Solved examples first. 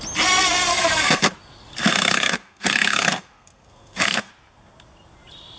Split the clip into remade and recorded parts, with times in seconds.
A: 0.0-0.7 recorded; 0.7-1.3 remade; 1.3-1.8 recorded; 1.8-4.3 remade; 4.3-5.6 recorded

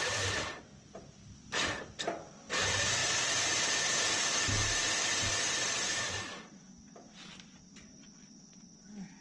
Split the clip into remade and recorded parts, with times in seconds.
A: 0.0-9.2 recorded

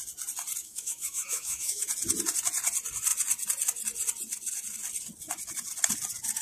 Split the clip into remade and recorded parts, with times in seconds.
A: 0.0-0.6 recorded; 0.6-1.9 remade; 1.9-6.4 recorded

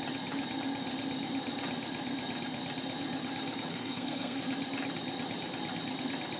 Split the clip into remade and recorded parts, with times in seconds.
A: 0.0-3.7 recorded; 3.7-4.4 remade; 4.4-6.4 recorded

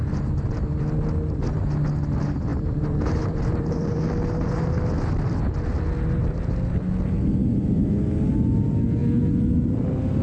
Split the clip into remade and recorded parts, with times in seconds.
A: 0.0-2.5 recorded; 2.5-4.0 remade; 4.0-10.2 recorded

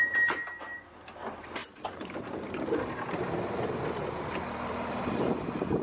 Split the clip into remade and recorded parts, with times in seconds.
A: 0.0-1.6 recorded; 1.6-2.2 remade; 2.2-5.8 recorded